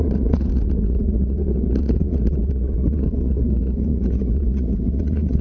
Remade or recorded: remade